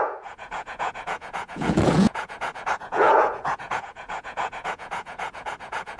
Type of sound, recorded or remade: remade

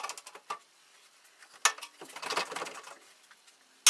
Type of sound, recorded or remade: recorded